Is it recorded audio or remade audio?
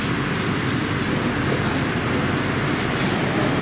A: recorded